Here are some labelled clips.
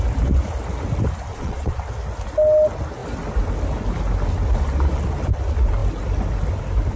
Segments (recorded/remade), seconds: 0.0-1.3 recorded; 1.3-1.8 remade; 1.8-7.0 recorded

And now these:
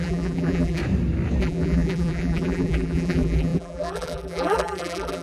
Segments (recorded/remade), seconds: 0.0-0.8 remade; 0.8-1.4 recorded; 1.4-5.2 remade